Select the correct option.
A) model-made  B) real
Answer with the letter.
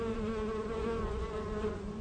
A